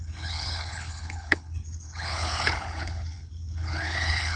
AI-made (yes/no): yes